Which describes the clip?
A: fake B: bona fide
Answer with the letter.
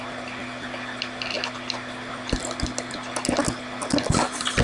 B